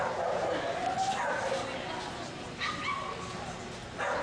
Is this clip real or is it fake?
real